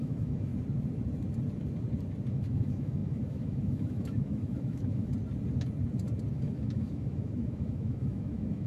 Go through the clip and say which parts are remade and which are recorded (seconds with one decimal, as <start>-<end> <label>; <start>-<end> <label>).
0.0-0.5 remade; 0.5-2.3 recorded; 2.3-5.1 remade; 5.1-6.3 recorded; 6.3-8.7 remade